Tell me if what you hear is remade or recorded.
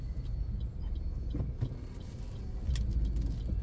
recorded